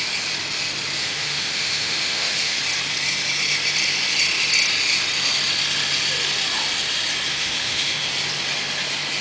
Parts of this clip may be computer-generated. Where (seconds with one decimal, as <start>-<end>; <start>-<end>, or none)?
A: 1.0-2.6; 7.3-8.1